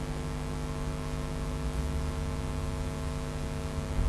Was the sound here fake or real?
real